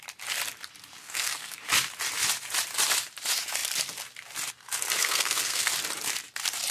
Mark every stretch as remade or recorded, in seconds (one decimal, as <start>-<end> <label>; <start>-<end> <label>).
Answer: 0.0-1.0 recorded; 1.0-1.6 remade; 1.6-5.0 recorded; 5.0-5.7 remade; 5.7-6.7 recorded